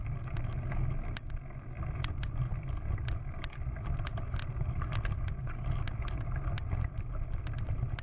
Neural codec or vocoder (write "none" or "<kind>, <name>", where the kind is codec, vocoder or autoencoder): none